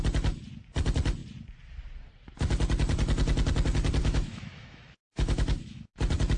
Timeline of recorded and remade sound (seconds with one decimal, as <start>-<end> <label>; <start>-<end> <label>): 0.0-4.0 recorded; 4.0-6.0 remade; 6.0-6.4 recorded